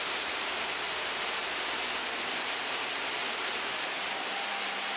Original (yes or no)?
no